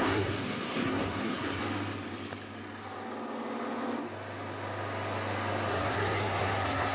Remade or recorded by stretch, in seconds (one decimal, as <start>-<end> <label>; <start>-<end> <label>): 0.0-1.6 remade; 1.6-5.7 recorded; 5.7-6.9 remade